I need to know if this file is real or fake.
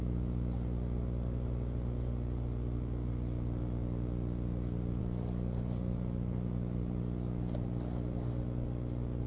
real